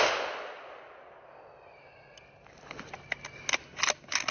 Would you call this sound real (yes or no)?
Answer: yes